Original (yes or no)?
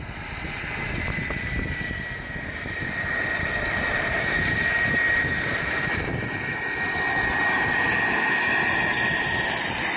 yes